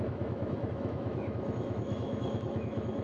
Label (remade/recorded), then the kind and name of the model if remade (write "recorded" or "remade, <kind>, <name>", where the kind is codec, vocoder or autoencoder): remade, autoencoder, DAC-VAE